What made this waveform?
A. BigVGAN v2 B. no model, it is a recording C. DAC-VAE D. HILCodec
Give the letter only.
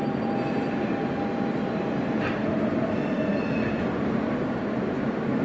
B